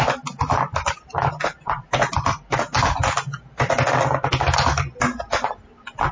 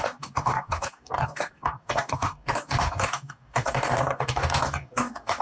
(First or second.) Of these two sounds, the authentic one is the first